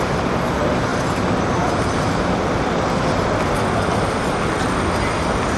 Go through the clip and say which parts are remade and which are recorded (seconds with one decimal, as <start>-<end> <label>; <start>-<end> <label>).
0.0-5.6 recorded